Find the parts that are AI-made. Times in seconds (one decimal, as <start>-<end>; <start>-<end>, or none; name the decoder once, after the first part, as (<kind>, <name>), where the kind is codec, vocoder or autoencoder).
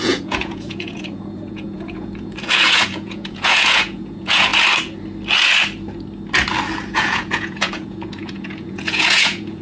0.0-4.5 (vocoder, Vocos); 6.9-9.6